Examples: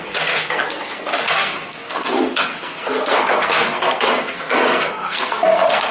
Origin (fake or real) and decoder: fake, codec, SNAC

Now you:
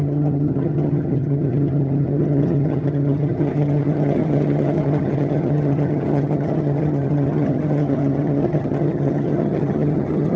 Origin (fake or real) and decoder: fake, vocoder, HiFi-GAN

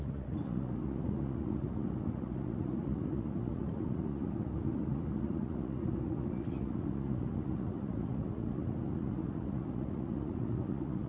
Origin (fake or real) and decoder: fake, vocoder, Vocos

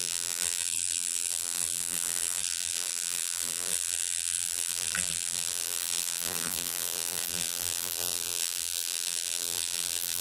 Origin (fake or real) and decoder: fake, vocoder, BigVGAN v2